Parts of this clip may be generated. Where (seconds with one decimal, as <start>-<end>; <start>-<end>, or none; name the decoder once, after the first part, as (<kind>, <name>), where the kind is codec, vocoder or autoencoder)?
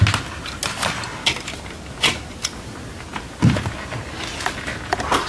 none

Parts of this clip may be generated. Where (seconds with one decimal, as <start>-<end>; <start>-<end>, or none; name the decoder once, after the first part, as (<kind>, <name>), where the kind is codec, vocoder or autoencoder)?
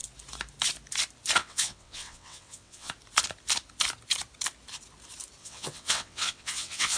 1.4-2.9 (vocoder, WaveNeXt); 5.4-7.0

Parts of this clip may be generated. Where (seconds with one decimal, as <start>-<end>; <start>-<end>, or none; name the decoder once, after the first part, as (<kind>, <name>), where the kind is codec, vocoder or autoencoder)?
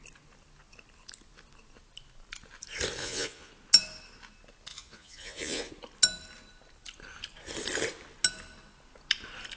3.0-3.5 (vocoder, Vocos); 4.7-5.7